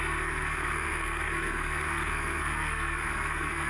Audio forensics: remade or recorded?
remade